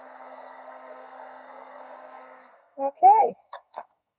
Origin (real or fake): fake